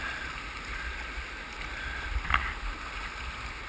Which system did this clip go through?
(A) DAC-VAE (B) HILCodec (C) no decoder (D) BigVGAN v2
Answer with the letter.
C